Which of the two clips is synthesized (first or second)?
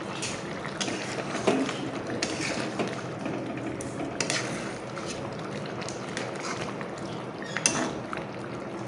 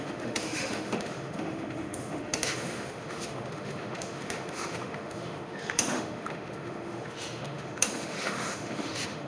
second